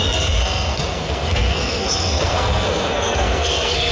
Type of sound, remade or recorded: remade